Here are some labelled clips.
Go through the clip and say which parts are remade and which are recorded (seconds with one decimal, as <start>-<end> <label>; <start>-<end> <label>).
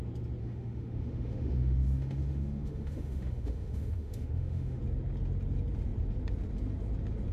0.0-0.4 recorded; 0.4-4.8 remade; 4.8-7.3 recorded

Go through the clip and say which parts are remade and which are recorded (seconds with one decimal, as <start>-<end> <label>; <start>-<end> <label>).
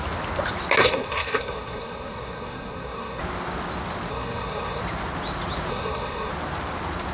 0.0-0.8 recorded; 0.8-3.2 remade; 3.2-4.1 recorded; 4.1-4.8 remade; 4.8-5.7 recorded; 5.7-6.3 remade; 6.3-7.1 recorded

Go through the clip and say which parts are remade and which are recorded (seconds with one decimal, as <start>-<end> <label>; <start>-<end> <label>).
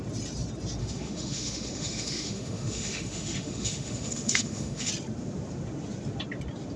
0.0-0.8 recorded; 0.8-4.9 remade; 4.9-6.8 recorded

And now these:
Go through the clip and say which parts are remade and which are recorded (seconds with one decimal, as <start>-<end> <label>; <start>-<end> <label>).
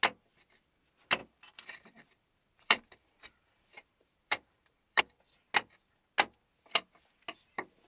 0.0-1.2 recorded; 1.2-5.0 remade; 5.0-7.9 recorded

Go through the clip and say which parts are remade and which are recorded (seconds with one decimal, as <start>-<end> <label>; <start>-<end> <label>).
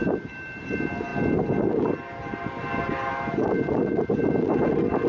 0.0-5.1 recorded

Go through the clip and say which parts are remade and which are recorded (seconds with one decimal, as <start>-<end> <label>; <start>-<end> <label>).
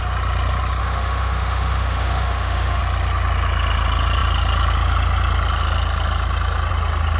0.0-0.8 recorded; 0.8-2.8 remade; 2.8-7.2 recorded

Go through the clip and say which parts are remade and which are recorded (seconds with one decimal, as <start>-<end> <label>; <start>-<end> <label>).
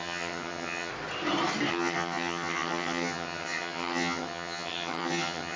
0.0-0.9 remade; 0.9-1.7 recorded; 1.7-5.6 remade